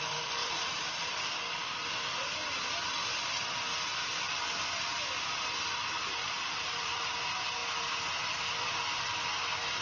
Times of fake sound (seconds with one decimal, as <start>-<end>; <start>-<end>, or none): 0.4-1.3; 6.2-7.1